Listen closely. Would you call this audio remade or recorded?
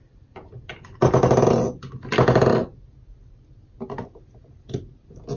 recorded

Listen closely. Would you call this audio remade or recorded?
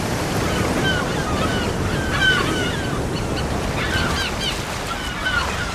recorded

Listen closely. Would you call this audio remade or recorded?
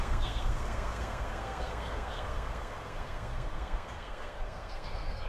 remade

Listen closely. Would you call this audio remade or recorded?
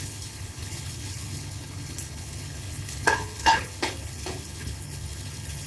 remade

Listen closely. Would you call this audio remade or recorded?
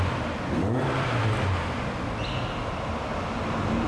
recorded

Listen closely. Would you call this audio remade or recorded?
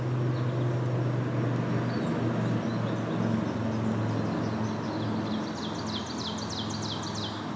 recorded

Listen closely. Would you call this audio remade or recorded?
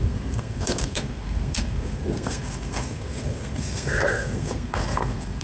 remade